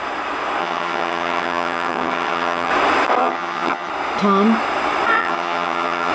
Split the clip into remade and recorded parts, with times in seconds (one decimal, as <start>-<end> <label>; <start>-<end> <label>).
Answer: 0.0-0.6 recorded; 0.6-2.7 remade; 2.7-3.2 recorded; 3.2-3.9 remade; 3.9-5.2 recorded; 5.2-6.1 remade